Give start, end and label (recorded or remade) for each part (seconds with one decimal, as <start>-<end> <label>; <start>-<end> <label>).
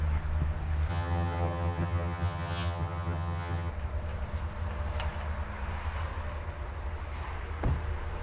0.0-0.9 recorded; 0.9-3.7 remade; 3.7-8.2 recorded